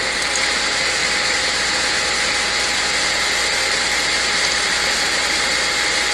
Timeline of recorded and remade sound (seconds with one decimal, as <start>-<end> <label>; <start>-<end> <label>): 0.0-6.1 recorded